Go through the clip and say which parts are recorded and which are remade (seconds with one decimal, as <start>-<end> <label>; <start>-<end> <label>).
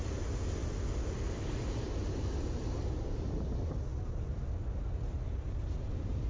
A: 0.0-6.3 recorded